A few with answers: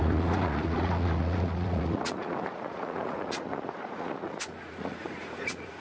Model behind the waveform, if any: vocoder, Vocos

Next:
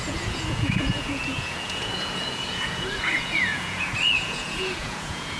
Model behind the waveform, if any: vocoder, Vocos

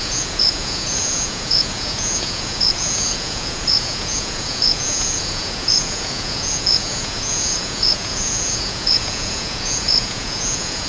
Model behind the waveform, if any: vocoder, Vocos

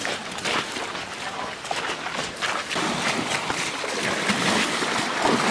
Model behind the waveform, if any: none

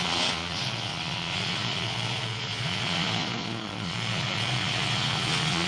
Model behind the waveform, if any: vocoder, Vocos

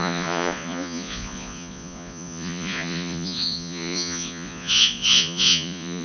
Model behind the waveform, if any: vocoder, Vocos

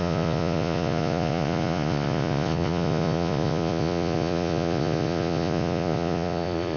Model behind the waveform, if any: vocoder, Vocos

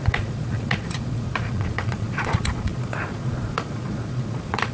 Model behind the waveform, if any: vocoder, Vocos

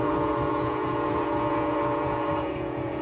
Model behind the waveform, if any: vocoder, Vocos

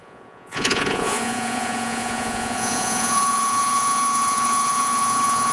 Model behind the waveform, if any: vocoder, Vocos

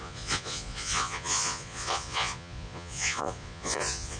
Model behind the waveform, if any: vocoder, Vocos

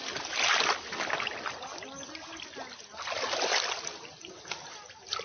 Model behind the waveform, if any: none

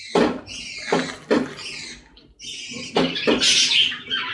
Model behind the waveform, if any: none